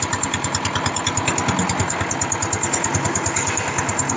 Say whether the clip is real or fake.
real